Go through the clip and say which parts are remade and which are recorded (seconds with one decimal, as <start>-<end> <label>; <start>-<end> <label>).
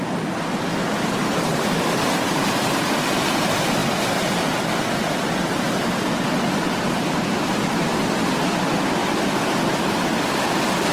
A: 0.0-9.0 recorded; 9.0-10.9 remade